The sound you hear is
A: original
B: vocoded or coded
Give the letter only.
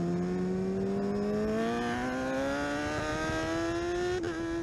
A